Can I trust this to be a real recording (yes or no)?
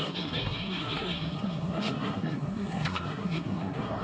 no